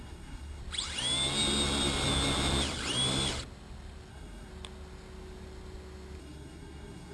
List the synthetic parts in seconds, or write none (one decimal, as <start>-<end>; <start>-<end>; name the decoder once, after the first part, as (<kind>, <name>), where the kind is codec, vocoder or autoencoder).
0.0-0.6 (codec, SNAC); 4.1-4.5; 6.2-7.1